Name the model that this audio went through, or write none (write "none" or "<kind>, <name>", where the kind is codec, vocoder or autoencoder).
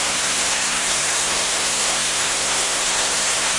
codec, SNAC